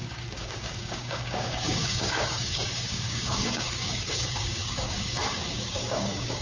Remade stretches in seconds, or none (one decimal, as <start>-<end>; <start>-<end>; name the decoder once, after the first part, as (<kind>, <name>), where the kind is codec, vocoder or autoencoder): 0.0-6.4 (codec, DAC)